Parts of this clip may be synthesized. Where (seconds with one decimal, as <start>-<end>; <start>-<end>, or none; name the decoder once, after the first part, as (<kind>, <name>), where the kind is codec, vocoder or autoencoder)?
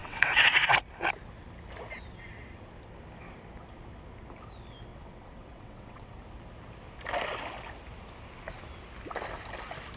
0.0-0.8 (vocoder, WaveNeXt); 4.9-6.1